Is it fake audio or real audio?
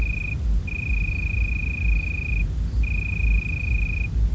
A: real